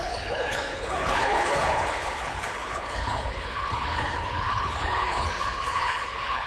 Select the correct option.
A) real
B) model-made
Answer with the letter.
B